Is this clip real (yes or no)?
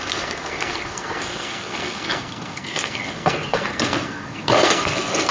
no